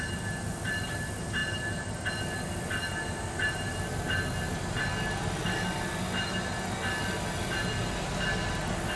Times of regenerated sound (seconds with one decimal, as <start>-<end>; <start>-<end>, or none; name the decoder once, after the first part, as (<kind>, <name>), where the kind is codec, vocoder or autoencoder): none